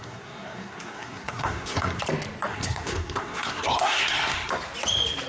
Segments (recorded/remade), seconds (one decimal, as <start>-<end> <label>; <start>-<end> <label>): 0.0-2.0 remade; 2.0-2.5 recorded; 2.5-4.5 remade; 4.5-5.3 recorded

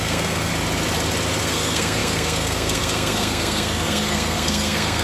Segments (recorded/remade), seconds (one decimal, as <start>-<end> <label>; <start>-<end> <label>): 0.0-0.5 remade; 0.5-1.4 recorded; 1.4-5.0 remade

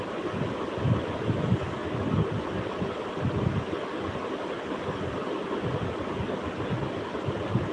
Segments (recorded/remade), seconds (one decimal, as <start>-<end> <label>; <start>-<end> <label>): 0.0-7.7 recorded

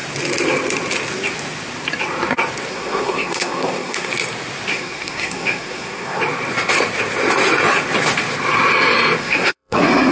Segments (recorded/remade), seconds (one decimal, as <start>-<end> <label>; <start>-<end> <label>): 0.0-2.7 recorded; 2.7-4.1 remade; 4.1-4.7 recorded; 4.7-6.2 remade; 6.2-9.2 recorded; 9.2-10.1 remade